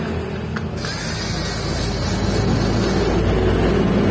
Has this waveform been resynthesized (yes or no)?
no